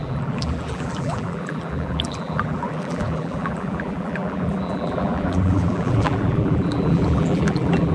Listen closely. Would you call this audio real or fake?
fake